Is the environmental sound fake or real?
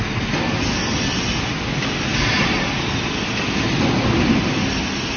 real